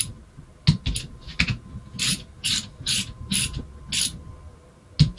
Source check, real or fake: real